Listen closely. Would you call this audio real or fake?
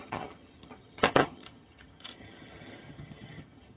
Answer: fake